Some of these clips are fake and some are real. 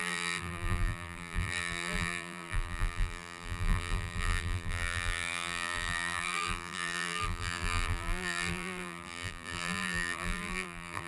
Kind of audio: fake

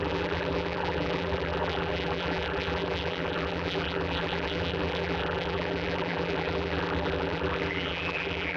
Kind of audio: fake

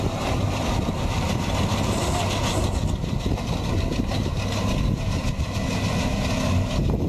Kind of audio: real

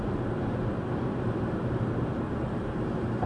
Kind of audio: fake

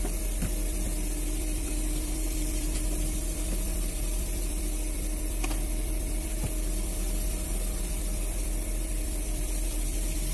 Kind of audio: fake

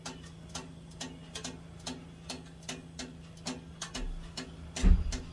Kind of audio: real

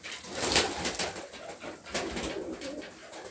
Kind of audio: real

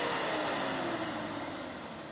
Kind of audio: real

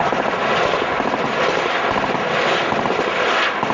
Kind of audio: real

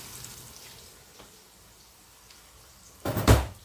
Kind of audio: fake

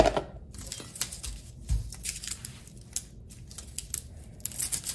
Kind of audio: real